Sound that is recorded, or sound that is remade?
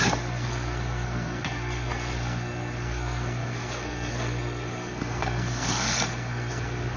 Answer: remade